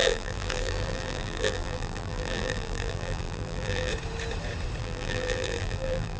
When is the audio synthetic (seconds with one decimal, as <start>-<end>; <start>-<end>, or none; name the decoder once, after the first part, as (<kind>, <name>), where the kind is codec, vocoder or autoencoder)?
0.0-3.9 (vocoder, BigVGAN v2); 4.8-6.2